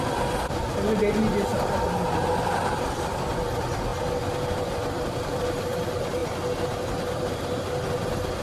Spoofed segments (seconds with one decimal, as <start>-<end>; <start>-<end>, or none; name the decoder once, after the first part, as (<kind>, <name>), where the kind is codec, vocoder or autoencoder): none